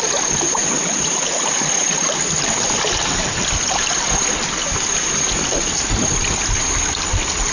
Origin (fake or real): real